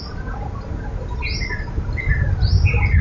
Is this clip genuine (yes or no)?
yes